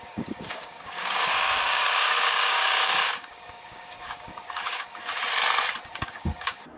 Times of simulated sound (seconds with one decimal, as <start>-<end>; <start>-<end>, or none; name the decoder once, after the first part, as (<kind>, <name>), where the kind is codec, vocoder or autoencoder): 0.0-5.1 (codec, DAC); 5.9-6.8